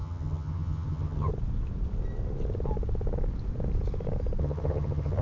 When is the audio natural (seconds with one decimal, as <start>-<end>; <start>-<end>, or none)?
1.3-4.4